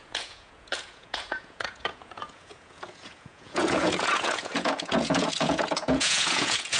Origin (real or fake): fake